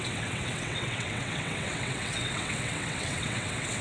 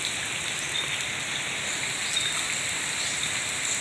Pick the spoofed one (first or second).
first